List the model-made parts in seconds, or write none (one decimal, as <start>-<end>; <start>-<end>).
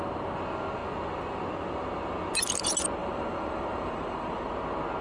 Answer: 3.0-4.5